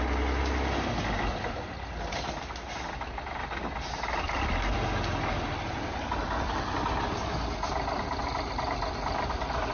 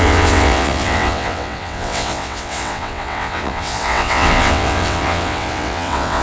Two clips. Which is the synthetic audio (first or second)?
second